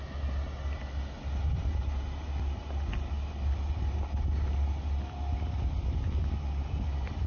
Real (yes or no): yes